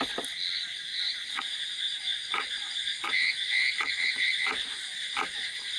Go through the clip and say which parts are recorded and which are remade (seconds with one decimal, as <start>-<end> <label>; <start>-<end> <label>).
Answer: 0.0-0.9 recorded; 0.9-1.4 remade; 1.4-2.1 recorded; 2.1-5.8 remade